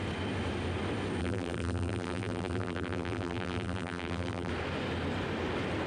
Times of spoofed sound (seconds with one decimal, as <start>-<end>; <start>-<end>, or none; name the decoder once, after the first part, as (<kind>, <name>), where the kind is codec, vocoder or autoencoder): 1.2-4.5 (vocoder, BigVGAN v2)